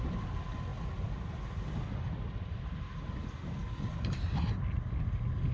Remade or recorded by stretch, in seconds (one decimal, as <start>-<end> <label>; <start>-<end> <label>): 0.0-5.5 recorded

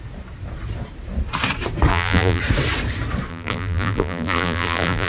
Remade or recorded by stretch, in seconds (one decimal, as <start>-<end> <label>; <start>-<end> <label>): 0.0-1.9 recorded; 1.9-2.4 remade; 2.4-3.3 recorded; 3.3-5.1 remade

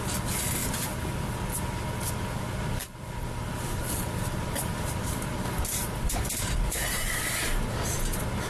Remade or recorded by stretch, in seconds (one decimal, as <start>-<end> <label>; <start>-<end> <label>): 0.0-2.8 recorded; 2.8-7.2 remade; 7.2-8.5 recorded

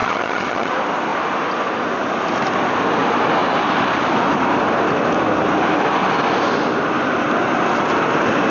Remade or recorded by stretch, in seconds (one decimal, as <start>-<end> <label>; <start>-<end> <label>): 0.0-0.7 remade; 0.7-8.5 recorded

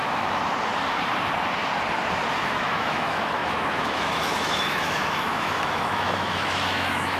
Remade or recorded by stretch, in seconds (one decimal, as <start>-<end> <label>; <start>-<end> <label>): 0.0-0.4 remade; 0.4-2.3 recorded; 2.3-7.2 remade

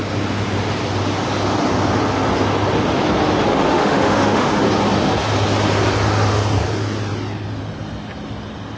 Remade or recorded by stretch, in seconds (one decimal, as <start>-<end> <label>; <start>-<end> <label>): 0.0-3.5 recorded; 3.5-4.5 remade; 4.5-8.8 recorded

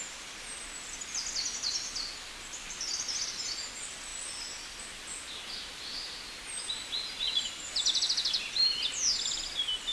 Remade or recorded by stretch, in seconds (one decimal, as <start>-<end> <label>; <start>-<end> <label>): 0.0-9.9 recorded